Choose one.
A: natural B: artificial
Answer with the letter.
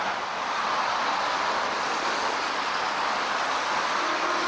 A